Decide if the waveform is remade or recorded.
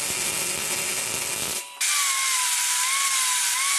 recorded